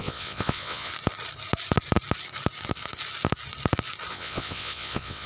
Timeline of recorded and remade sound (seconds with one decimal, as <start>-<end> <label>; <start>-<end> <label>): 0.0-0.9 remade; 0.9-4.1 recorded; 4.1-5.3 remade